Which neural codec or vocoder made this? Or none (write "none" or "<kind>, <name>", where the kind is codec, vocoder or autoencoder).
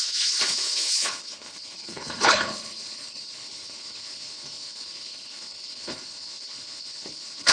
codec, HILCodec